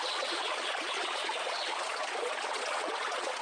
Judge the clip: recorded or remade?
remade